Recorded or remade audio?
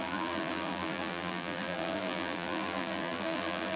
remade